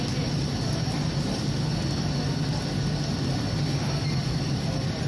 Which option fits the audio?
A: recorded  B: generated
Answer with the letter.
A